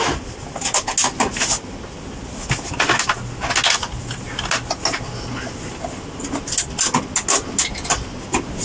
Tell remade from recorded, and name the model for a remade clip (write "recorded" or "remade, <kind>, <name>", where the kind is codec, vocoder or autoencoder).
recorded